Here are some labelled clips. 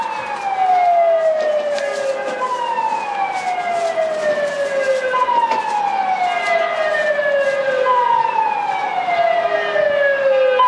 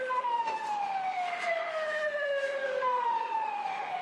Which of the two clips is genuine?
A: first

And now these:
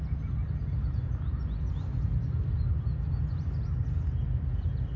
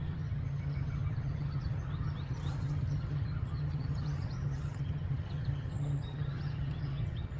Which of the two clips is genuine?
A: first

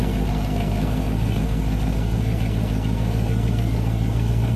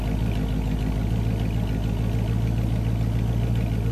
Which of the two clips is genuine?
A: second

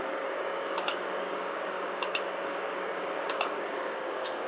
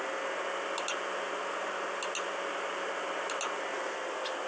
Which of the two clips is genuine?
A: second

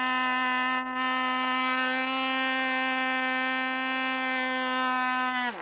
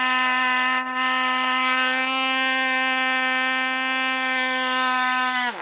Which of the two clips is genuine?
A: first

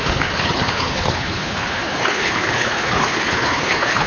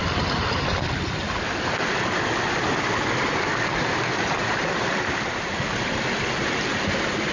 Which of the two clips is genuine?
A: second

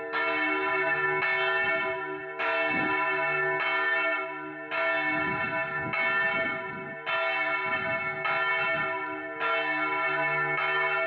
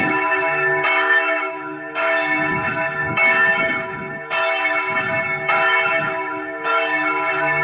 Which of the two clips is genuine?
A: first